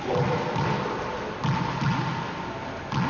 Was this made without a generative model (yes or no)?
yes